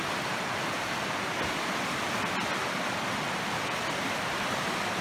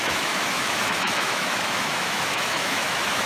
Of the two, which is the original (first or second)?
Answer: first